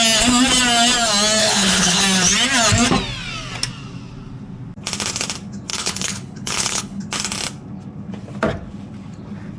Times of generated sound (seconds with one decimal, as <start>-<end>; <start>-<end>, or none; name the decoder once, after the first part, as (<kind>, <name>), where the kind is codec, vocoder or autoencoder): 1.4-2.0 (codec, HILCodec); 5.7-7.0